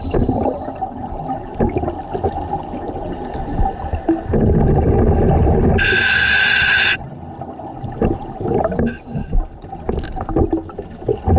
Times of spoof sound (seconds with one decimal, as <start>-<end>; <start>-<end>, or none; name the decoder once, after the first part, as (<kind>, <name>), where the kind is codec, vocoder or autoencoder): 9.2-10.3 (vocoder, BigVGAN v2)